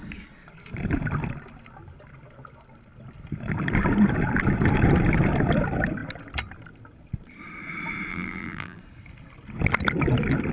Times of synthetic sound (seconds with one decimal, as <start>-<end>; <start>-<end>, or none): 8.1-8.8